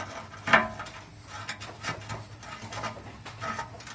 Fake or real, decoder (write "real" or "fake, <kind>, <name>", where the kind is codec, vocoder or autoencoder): real